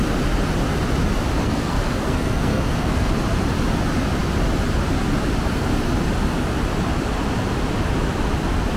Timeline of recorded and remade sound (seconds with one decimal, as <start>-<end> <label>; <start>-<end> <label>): 0.0-1.4 recorded; 1.4-3.1 remade; 3.1-8.8 recorded